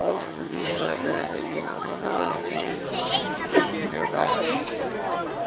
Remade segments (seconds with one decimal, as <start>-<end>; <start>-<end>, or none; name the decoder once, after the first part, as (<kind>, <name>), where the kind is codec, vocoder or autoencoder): 0.0-2.7 (vocoder, HiFi-GAN); 3.9-4.3